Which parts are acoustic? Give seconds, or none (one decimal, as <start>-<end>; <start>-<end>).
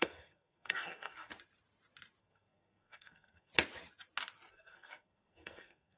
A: 1.3-2.2; 3.5-4.5